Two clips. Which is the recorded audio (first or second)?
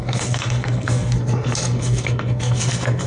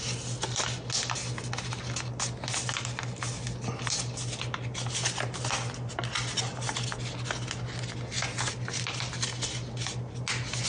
second